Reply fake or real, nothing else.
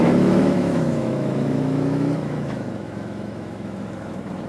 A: fake